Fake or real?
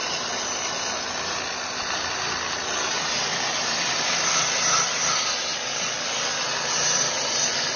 real